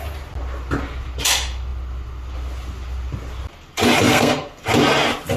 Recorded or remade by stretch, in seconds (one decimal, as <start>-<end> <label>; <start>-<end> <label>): 0.0-4.0 recorded; 4.0-4.6 remade; 4.6-5.4 recorded